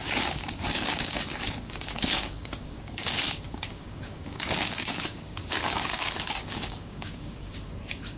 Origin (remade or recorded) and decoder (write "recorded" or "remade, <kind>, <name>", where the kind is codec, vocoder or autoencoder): remade, codec, DAC